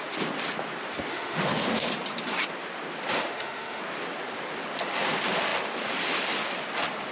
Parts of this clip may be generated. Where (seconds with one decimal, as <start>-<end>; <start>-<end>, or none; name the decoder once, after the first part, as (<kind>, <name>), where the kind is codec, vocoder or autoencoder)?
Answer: 1.1-1.9 (autoencoder, DAC-VAE); 3.2-3.8